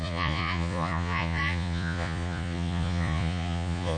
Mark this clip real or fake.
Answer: fake